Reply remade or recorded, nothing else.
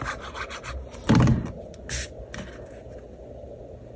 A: recorded